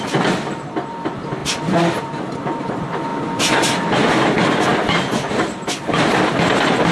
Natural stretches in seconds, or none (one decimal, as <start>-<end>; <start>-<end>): 0.0-6.9